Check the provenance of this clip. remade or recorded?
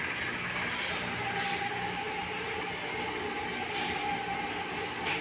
recorded